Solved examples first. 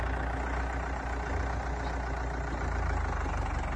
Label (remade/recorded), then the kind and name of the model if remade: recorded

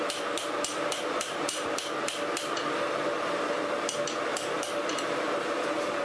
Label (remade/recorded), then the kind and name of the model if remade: recorded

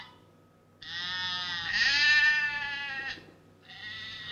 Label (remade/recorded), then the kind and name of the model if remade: recorded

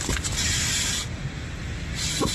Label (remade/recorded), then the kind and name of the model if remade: recorded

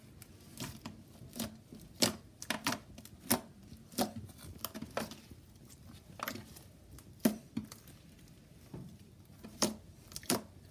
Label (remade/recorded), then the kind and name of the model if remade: recorded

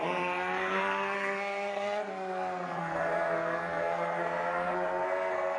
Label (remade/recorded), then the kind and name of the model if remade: remade, codec, SNAC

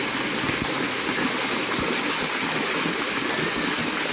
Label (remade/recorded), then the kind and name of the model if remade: recorded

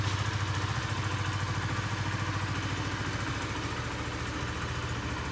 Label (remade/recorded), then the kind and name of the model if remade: recorded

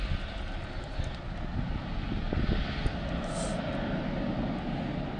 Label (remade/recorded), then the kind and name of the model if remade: recorded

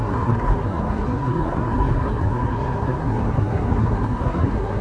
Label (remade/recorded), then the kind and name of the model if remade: remade, codec, SNAC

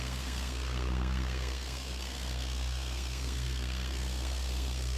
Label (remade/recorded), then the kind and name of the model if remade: remade, codec, SNAC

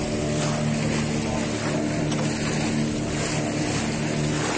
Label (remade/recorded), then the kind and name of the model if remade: recorded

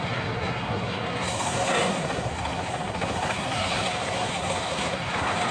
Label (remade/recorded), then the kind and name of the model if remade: remade, codec, SNAC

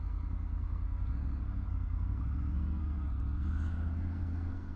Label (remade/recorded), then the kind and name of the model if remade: remade, codec, SNAC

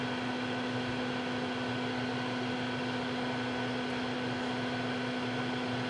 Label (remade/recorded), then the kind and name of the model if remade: recorded